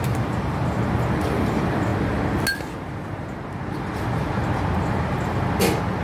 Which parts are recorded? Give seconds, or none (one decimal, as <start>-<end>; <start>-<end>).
0.0-6.0